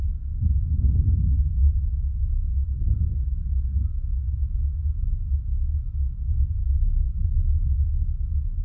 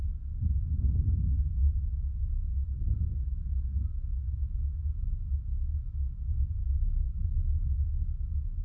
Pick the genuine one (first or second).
second